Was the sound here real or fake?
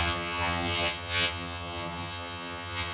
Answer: fake